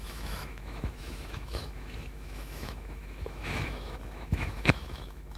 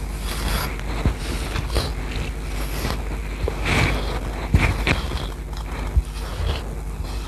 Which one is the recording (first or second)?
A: second